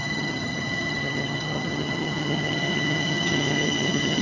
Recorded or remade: remade